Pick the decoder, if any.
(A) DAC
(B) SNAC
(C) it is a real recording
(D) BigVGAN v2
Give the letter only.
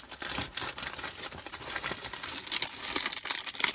C